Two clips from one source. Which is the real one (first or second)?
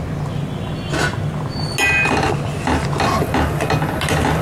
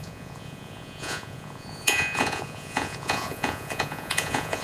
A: first